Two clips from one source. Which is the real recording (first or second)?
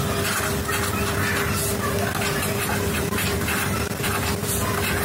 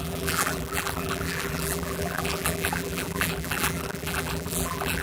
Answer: first